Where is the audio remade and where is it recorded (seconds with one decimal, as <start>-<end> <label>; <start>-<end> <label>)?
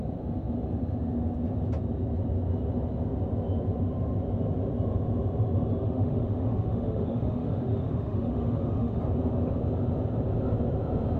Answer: 0.0-5.8 recorded; 5.8-9.0 remade; 9.0-11.2 recorded